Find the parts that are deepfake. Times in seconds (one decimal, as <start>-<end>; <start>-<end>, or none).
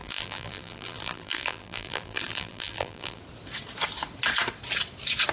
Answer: 0.0-3.2